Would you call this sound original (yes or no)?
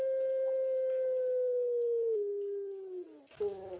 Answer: yes